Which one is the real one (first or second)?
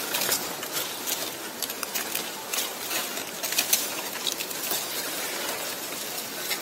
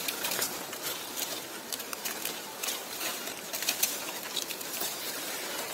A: first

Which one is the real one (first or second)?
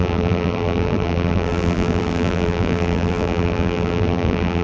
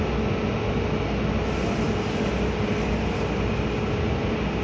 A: second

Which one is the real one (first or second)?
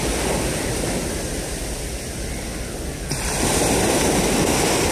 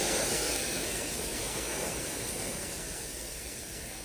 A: first